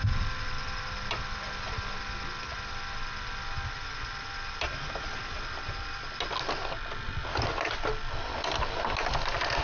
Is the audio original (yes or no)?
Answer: yes